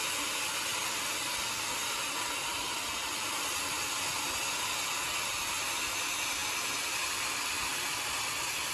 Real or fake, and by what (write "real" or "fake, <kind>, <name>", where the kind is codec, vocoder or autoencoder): real